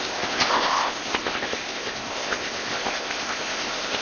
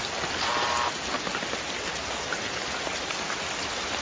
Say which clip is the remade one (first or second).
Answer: first